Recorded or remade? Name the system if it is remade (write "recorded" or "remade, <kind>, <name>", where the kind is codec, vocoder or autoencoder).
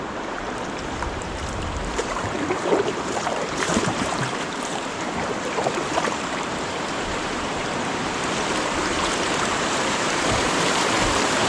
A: remade, vocoder, BigVGAN v2